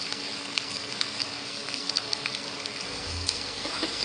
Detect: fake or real fake